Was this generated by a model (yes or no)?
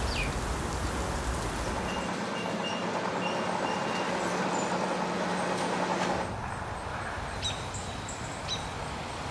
no